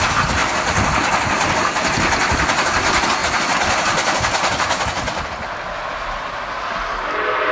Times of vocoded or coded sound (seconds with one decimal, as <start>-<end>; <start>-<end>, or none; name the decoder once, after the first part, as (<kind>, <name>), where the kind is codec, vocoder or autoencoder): none